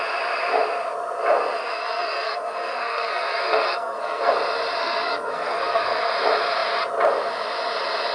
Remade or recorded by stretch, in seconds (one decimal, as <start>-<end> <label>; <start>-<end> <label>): 0.0-1.6 recorded; 1.6-4.3 remade; 4.3-4.8 recorded; 4.8-6.1 remade; 6.1-8.1 recorded